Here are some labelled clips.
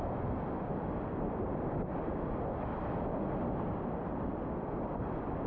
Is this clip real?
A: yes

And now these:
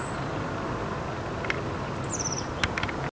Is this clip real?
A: yes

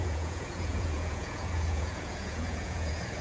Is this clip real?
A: no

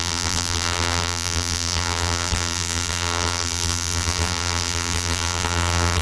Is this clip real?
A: no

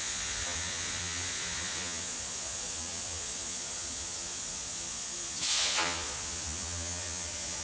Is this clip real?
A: no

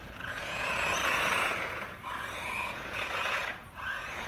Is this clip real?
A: no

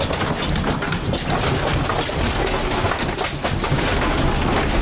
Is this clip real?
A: yes